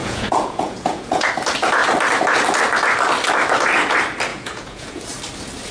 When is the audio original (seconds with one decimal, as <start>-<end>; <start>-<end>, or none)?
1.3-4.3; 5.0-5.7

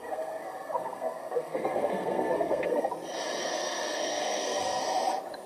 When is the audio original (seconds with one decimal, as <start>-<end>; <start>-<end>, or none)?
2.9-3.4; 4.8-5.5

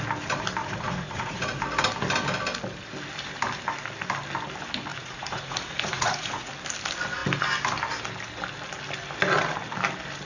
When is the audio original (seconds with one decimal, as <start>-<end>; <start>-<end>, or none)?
0.0-0.6; 1.6-4.9; 6.5-10.2

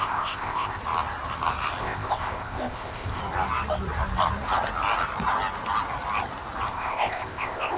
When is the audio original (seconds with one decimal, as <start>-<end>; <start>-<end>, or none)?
0.8-1.8; 3.2-6.7

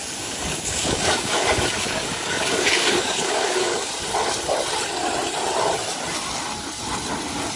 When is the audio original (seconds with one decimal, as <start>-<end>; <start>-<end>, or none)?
3.9-7.6

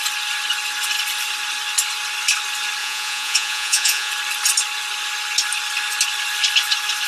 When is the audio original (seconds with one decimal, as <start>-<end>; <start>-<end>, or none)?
0.0-2.8; 4.1-7.1

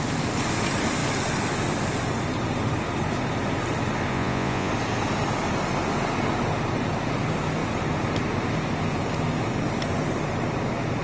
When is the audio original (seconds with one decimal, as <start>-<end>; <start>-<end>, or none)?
0.0-4.1; 4.7-11.0